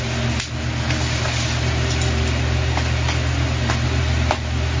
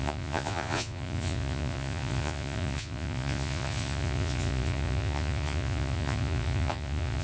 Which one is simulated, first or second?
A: second